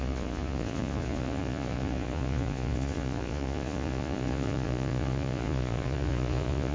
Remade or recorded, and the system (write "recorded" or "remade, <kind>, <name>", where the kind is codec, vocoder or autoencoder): remade, vocoder, Vocos